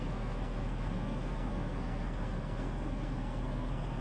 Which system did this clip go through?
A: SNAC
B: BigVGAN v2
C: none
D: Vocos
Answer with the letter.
A